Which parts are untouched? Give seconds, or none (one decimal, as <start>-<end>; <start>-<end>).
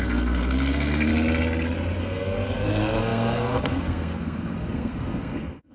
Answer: 1.1-2.0